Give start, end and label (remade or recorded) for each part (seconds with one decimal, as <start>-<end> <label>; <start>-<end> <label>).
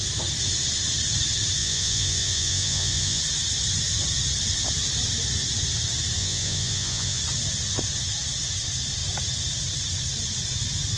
0.0-1.6 recorded; 1.6-3.2 remade; 3.2-6.2 recorded; 6.2-7.2 remade; 7.2-11.0 recorded